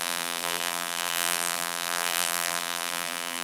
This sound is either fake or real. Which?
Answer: fake